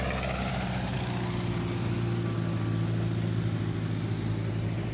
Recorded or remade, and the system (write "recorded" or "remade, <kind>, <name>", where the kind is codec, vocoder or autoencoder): recorded